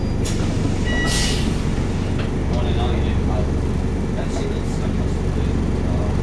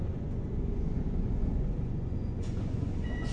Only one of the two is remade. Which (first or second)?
second